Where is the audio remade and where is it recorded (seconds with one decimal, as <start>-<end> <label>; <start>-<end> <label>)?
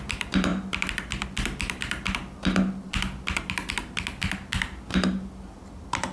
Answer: 0.0-6.1 recorded